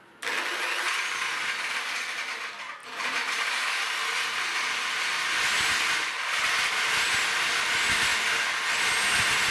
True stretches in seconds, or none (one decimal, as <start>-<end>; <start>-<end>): 0.0-2.8; 3.7-9.5